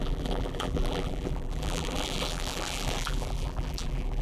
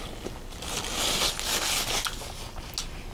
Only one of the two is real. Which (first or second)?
second